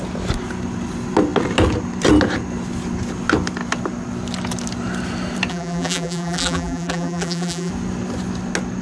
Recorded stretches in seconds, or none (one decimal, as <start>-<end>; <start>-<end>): 0.0-5.5; 7.7-8.8